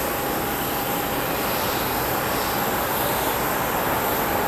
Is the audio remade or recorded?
recorded